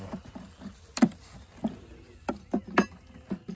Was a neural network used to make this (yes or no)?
no